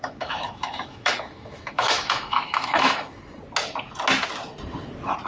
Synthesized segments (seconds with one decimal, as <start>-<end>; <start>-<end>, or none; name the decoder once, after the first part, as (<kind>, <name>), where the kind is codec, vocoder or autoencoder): 0.0-3.2 (autoencoder, DAC-VAE)